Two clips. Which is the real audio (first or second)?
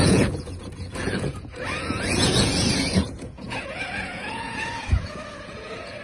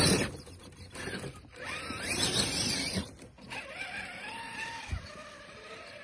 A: second